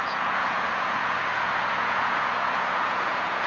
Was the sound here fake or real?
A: fake